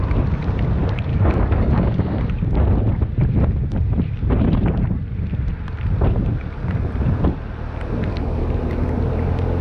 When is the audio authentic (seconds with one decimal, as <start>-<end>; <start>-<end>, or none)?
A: 0.0-1.1; 2.0-8.1; 8.6-9.6